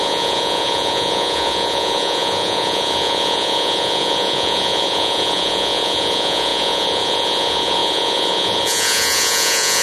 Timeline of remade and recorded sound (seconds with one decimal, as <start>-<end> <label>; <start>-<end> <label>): 0.0-9.8 remade